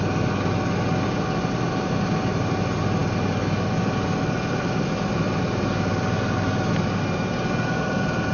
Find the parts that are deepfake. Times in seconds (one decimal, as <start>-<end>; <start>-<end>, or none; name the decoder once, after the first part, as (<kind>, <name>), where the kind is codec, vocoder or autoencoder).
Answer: none